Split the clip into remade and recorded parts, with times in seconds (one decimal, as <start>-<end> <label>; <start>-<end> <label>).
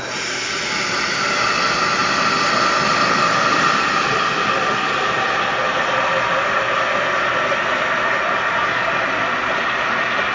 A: 0.0-10.3 recorded